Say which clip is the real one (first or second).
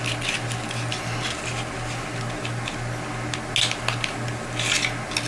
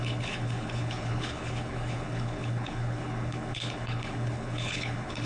first